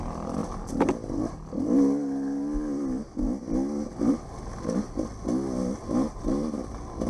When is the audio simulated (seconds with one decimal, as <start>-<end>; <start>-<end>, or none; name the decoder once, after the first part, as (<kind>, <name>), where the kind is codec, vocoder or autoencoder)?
none